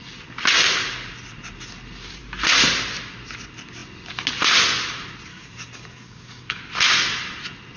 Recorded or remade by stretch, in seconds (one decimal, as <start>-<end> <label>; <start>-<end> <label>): 0.0-5.3 recorded; 5.3-6.6 remade; 6.6-7.8 recorded